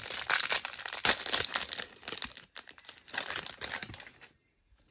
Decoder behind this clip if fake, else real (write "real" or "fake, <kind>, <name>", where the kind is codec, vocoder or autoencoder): real